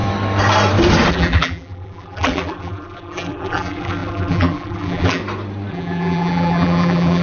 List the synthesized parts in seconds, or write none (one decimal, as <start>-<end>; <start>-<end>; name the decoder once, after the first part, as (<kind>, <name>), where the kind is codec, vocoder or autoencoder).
1.1-5.2 (vocoder, BigVGAN v2); 5.7-7.2